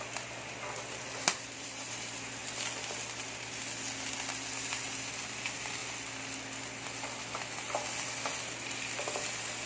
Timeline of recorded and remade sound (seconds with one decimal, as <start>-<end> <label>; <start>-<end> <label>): 0.0-1.3 recorded; 1.3-1.9 remade; 1.9-9.7 recorded